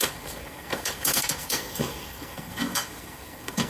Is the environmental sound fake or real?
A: fake